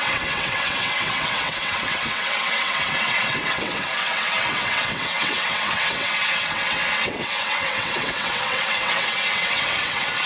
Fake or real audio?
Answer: fake